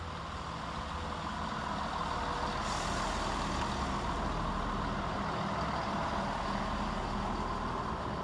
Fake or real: real